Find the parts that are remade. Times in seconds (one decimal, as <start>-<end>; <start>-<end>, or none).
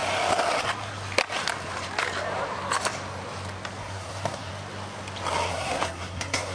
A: 3.8-4.5; 5.5-6.5